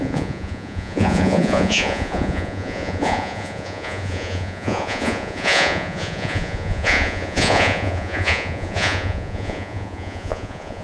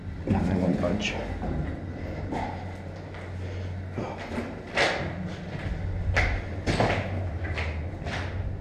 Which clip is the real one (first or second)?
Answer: second